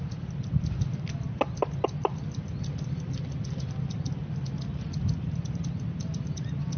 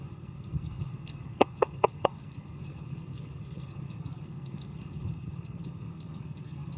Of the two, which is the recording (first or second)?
first